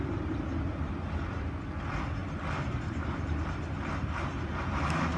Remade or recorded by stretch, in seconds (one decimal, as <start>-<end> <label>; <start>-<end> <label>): 0.0-5.2 recorded